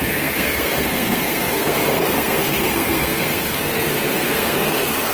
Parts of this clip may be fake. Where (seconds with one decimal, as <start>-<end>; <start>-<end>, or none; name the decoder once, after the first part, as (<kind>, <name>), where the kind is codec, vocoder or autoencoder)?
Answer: 0.0-5.1 (codec, SNAC)